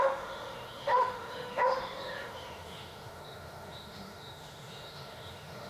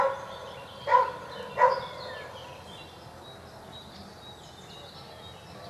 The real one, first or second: second